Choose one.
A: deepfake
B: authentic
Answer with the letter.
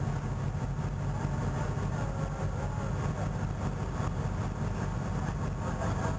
B